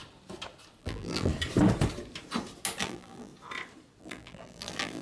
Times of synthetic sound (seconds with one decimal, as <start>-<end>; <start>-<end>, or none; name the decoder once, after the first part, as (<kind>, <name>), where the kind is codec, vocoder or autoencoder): 0.8-1.3 (vocoder, BigVGAN v2); 2.8-3.3; 4.0-5.0